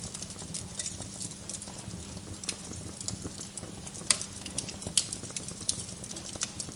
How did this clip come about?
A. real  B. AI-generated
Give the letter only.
B